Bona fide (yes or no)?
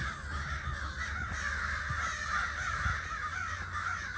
yes